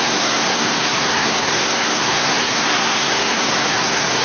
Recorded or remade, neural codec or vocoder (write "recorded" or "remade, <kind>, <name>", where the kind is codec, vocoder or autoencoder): remade, codec, SNAC